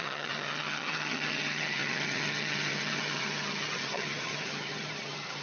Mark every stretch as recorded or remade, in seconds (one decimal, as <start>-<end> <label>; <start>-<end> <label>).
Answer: 0.0-5.4 remade

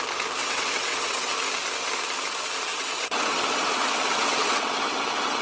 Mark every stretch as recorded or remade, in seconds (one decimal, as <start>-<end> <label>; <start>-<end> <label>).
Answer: 0.0-0.4 recorded; 0.4-1.3 remade; 1.3-2.7 recorded; 2.7-5.4 remade

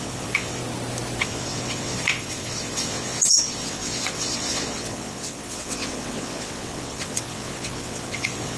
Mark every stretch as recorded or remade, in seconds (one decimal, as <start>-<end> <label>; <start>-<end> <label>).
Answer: 0.0-0.6 remade; 0.6-1.2 recorded; 1.2-8.6 remade